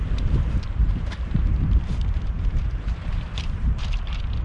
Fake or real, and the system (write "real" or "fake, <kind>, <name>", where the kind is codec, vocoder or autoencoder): fake, vocoder, BigVGAN v2